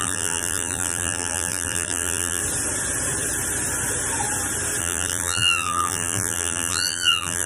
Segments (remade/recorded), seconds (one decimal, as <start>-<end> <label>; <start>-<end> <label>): 0.0-2.4 remade; 2.4-4.8 recorded; 4.8-7.5 remade

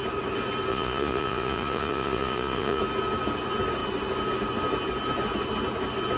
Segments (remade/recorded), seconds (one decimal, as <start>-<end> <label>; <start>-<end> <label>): 0.0-0.7 recorded; 0.7-2.8 remade; 2.8-6.2 recorded

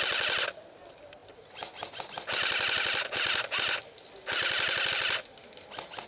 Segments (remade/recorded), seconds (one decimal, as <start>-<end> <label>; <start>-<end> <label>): 0.0-6.1 recorded

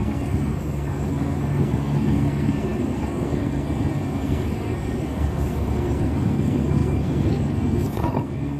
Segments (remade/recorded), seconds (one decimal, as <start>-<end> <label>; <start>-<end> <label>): 0.0-8.6 remade

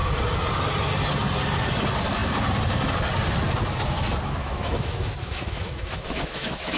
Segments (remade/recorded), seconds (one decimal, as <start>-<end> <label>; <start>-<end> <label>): 0.0-4.4 recorded; 4.4-6.8 remade

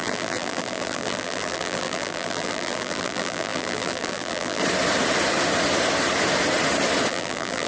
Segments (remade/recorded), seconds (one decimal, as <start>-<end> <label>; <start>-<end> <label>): 0.0-4.6 remade; 4.6-7.1 recorded; 7.1-7.7 remade

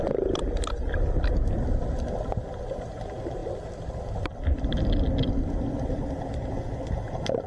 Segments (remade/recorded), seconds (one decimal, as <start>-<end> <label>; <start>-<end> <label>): 0.0-7.5 recorded

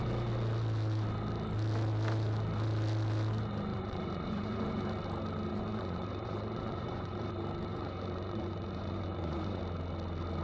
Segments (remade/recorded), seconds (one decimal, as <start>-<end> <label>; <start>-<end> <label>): 0.0-3.7 recorded; 3.7-4.8 remade; 4.8-5.5 recorded; 5.5-7.3 remade; 7.3-7.7 recorded; 7.7-9.6 remade; 9.6-10.4 recorded